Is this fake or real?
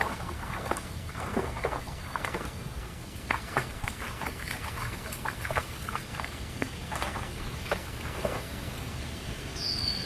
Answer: fake